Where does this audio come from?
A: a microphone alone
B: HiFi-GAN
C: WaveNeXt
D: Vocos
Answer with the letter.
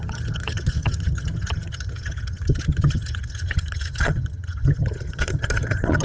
B